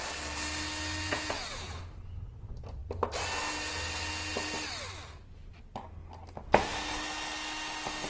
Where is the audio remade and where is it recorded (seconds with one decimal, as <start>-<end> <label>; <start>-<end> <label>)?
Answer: 0.0-1.1 recorded; 1.1-1.8 remade; 1.8-8.1 recorded